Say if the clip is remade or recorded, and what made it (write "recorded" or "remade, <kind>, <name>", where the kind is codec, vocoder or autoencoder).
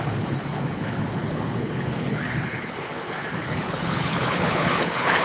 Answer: remade, codec, HILCodec